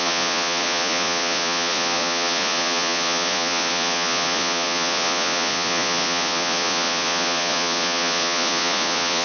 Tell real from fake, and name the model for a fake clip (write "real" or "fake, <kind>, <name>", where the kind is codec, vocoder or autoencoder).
fake, vocoder, Vocos